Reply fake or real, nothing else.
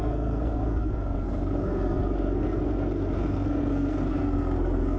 fake